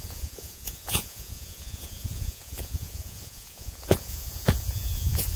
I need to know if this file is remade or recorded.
remade